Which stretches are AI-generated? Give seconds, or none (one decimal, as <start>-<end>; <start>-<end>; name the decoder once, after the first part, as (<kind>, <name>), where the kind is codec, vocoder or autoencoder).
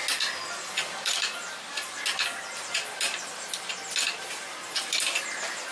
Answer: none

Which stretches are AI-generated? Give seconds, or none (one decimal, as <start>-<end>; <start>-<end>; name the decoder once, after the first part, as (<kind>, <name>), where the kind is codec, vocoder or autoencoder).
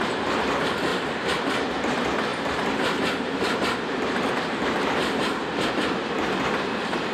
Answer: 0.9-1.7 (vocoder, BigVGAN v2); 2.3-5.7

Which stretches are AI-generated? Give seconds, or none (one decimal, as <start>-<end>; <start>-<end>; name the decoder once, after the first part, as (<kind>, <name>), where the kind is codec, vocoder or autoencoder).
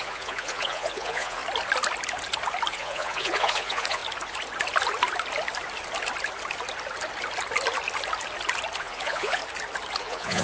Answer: 0.0-1.4 (vocoder, Vocos); 2.7-4.0; 8.8-9.4; 10.0-10.4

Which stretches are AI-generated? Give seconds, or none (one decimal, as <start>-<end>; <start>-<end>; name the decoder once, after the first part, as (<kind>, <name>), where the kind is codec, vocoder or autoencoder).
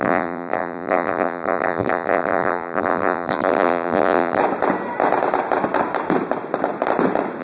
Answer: 0.0-4.4 (vocoder, BigVGAN v2)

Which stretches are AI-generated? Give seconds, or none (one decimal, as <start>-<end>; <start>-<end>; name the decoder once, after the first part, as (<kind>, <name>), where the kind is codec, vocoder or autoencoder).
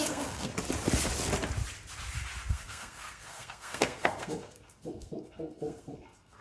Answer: 0.0-0.5 (codec, SNAC); 2.5-6.4